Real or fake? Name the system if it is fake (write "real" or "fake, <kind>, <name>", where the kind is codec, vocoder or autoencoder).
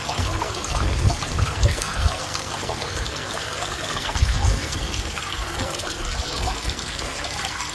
fake, codec, SNAC